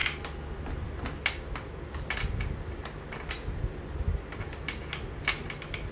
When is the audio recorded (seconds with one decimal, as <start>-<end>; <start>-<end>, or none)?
0.0-5.9

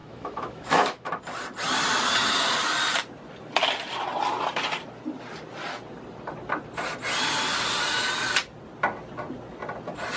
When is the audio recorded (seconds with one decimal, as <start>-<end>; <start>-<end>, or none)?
1.2-10.2

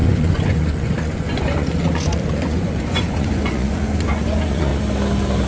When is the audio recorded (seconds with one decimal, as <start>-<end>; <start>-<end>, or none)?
4.7-5.5

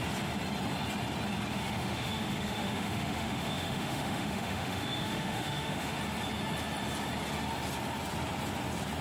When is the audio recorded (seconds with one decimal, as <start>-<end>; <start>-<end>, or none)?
0.0-1.5; 6.0-9.0

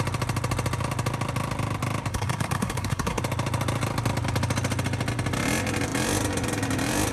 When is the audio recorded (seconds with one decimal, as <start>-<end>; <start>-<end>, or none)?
0.0-2.1; 3.2-7.1

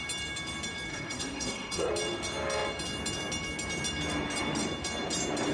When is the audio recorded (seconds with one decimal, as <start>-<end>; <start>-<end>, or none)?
0.0-0.9; 1.9-5.5